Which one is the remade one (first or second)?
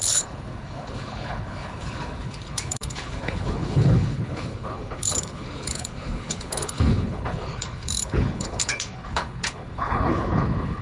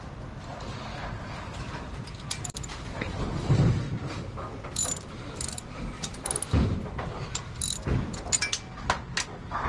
first